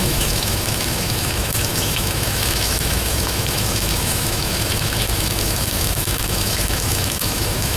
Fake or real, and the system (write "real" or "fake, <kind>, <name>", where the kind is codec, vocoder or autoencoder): fake, autoencoder, DAC-VAE